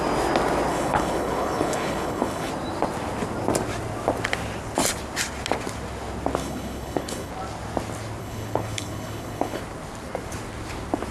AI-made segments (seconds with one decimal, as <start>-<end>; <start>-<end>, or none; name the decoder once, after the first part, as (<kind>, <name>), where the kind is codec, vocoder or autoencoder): 0.7-2.5 (codec, HILCodec); 6.4-7.3; 8.2-9.6